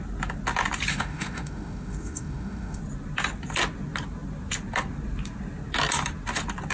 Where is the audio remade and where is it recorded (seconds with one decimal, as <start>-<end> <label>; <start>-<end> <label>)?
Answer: 0.0-0.9 recorded; 0.9-2.8 remade; 2.8-6.7 recorded